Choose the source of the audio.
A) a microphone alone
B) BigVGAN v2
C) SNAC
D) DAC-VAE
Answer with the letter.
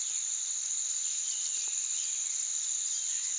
A